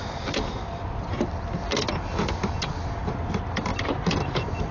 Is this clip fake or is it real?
real